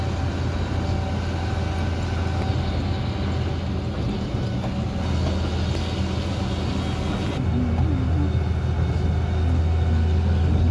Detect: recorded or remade recorded